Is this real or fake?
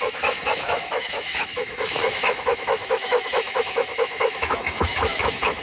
fake